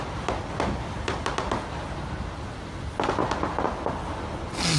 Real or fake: real